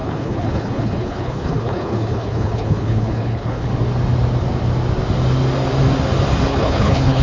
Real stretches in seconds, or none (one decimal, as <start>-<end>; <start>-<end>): 3.7-6.5